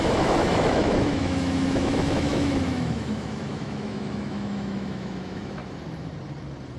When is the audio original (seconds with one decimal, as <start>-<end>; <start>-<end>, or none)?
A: 5.6-6.8